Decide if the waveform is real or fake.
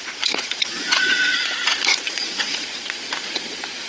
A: fake